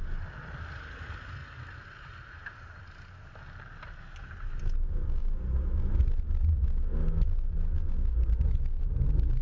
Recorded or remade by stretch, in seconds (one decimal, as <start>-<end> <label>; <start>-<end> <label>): 0.0-9.4 recorded